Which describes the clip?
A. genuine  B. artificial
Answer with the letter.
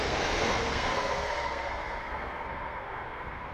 B